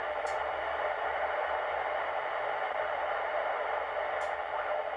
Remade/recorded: recorded